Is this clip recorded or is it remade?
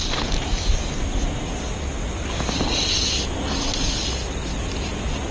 recorded